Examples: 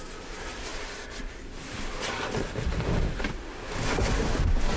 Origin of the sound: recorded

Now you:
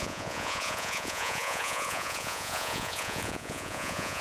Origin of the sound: remade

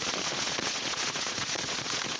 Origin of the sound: remade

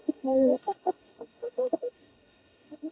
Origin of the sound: remade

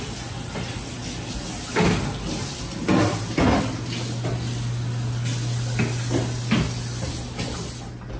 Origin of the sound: recorded